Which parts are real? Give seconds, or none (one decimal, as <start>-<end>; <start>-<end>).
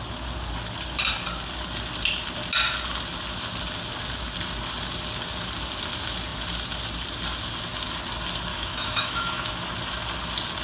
0.0-8.5; 9.5-10.6